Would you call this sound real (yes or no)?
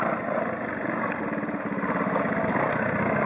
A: no